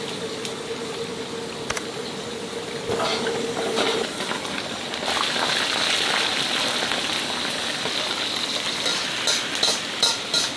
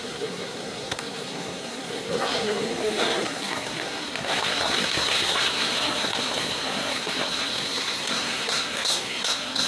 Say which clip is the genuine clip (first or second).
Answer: first